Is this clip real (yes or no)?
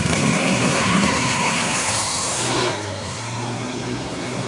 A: no